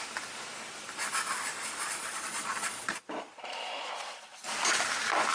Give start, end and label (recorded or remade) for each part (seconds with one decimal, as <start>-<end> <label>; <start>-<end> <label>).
0.0-2.0 recorded; 2.0-4.2 remade; 4.2-5.3 recorded